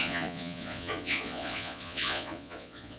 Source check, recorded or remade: remade